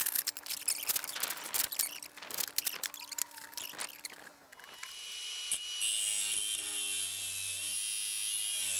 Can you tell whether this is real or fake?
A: real